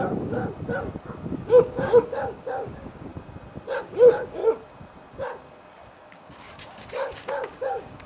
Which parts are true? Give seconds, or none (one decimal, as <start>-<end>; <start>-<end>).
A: 0.4-1.5; 3.1-3.8; 4.4-5.9